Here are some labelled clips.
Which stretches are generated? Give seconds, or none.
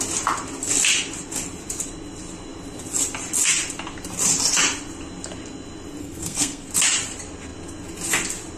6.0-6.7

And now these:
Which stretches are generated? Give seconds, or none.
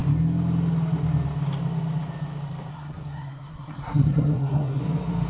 2.7-4.8